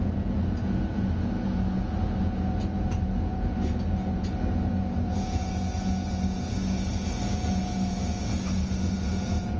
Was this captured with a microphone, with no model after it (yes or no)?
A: no